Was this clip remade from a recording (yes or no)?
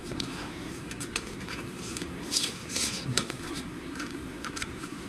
yes